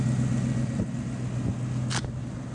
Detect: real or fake real